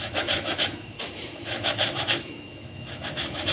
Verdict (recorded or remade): remade